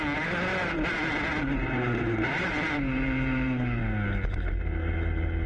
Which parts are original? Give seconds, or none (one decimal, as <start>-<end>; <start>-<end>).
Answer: 0.0-0.5; 3.8-5.5